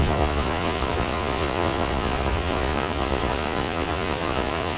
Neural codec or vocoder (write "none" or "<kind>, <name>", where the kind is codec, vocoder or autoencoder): vocoder, Vocos